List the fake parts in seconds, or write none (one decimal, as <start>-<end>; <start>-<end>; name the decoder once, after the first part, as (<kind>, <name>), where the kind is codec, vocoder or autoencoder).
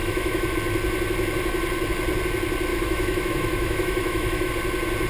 0.0-0.5 (autoencoder, DAC-VAE); 2.7-4.5